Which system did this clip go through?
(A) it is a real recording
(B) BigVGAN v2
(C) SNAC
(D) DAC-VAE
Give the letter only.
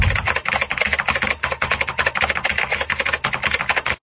A